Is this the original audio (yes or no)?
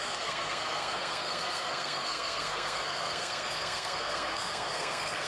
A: no